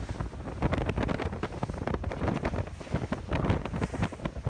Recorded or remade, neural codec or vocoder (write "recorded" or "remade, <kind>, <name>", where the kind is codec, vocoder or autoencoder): recorded